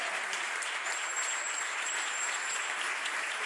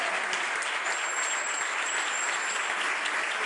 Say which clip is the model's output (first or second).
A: first